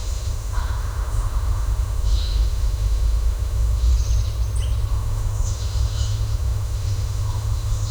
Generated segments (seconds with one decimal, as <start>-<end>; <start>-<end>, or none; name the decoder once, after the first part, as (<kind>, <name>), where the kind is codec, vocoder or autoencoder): 0.0-3.9 (autoencoder, DAC-VAE); 4.9-7.9